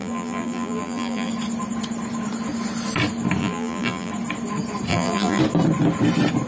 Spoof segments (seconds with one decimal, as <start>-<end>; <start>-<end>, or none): 0.0-1.3; 3.4-4.1; 4.9-5.4